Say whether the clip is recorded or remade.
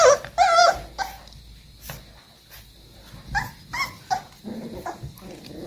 recorded